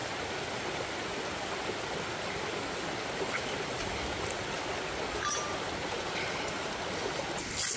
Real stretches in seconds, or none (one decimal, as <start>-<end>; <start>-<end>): 0.0-7.8